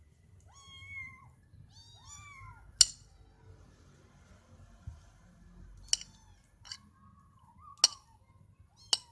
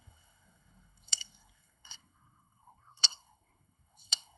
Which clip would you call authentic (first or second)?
first